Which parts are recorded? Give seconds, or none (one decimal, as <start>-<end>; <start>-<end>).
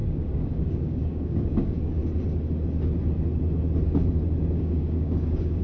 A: 2.0-4.5